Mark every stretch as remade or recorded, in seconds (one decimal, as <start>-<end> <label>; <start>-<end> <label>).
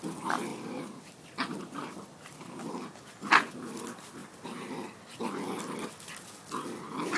0.0-0.5 recorded; 0.5-2.7 remade; 2.7-7.2 recorded